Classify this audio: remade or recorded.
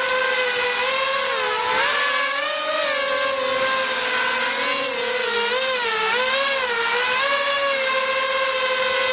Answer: recorded